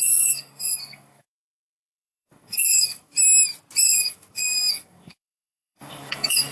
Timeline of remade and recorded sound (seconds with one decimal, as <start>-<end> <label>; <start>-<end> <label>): 0.0-3.1 remade; 3.1-3.8 recorded; 3.8-6.5 remade